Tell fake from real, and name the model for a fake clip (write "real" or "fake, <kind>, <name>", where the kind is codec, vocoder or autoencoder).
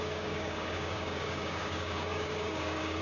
fake, codec, DAC